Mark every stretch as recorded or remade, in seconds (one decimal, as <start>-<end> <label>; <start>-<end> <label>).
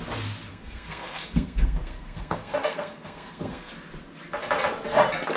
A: 0.0-0.5 recorded; 0.5-3.7 remade; 3.7-5.4 recorded